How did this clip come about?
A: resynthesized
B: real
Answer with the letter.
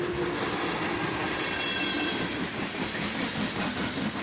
B